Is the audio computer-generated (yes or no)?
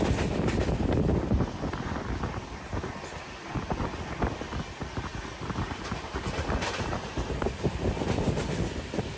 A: no